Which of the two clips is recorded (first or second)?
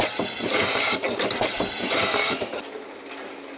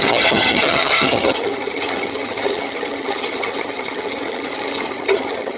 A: first